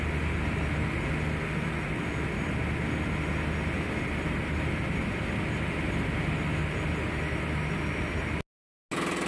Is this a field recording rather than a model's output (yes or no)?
yes